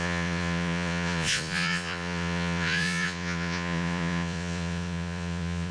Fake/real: fake